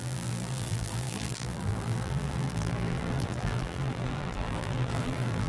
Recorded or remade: remade